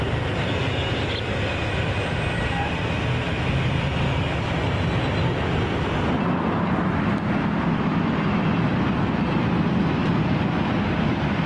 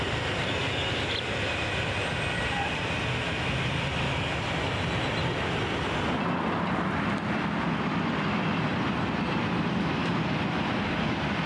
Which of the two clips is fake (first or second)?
second